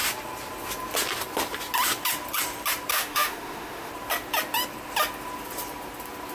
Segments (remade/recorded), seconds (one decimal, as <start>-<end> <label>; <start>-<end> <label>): 0.0-2.9 recorded; 2.9-3.9 remade; 3.9-6.3 recorded